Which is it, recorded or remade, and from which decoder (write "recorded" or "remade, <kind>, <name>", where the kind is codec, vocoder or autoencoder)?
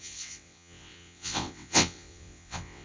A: remade, vocoder, WaveNeXt